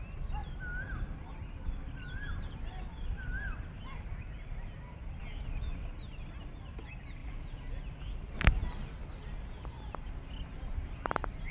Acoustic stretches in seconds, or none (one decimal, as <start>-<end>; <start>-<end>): 0.0-11.5